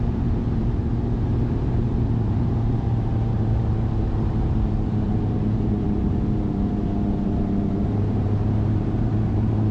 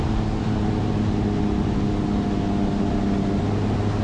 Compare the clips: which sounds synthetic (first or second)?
first